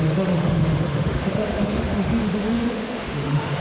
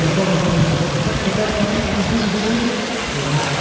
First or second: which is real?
second